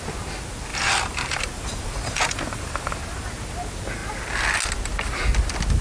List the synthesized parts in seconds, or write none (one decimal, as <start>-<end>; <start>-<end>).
0.7-3.0